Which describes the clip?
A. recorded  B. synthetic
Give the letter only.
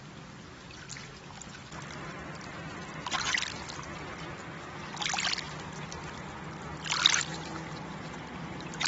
A